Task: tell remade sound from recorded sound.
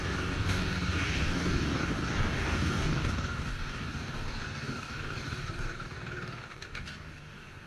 remade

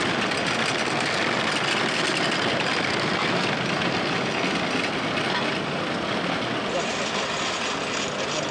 recorded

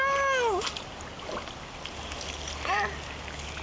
recorded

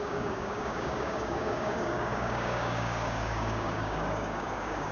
remade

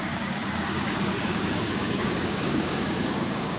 remade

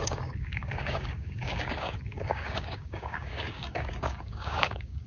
remade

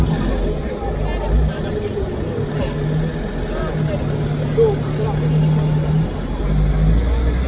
recorded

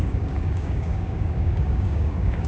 remade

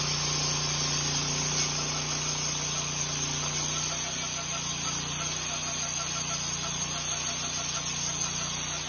recorded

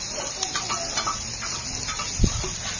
recorded